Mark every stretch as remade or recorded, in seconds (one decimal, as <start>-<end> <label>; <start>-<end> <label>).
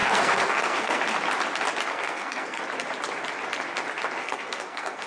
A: 0.0-1.0 remade; 1.0-1.9 recorded; 1.9-2.6 remade; 2.6-4.2 recorded; 4.2-5.1 remade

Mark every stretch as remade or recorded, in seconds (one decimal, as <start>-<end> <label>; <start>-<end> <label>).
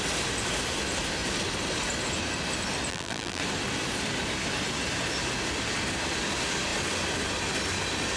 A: 0.0-2.9 recorded; 2.9-3.4 remade; 3.4-8.2 recorded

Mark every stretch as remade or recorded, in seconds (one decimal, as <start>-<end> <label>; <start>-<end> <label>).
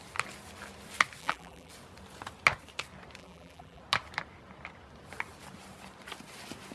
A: 0.0-1.2 recorded; 1.2-1.7 remade; 1.7-3.2 recorded; 3.2-3.8 remade; 3.8-6.7 recorded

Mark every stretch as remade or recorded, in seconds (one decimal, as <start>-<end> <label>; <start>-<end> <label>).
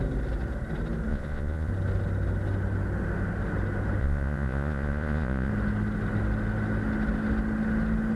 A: 0.0-1.1 recorded; 1.1-1.7 remade; 1.7-4.0 recorded; 4.0-5.5 remade; 5.5-8.2 recorded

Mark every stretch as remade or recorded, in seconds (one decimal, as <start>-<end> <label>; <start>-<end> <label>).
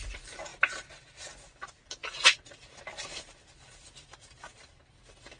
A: 0.0-2.0 recorded; 2.0-5.4 remade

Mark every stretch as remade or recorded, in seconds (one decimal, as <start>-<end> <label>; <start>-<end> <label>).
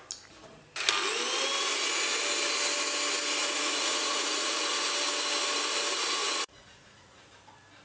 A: 0.0-3.4 recorded; 3.4-4.7 remade; 4.7-6.2 recorded; 6.2-7.2 remade; 7.2-7.8 recorded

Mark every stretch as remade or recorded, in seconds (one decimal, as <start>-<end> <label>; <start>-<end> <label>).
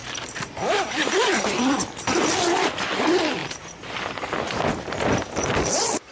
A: 0.0-1.4 remade; 1.4-3.4 recorded; 3.4-4.7 remade; 4.7-6.1 recorded